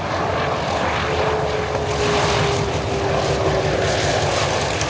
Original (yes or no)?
yes